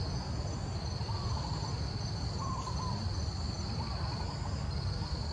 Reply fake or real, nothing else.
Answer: real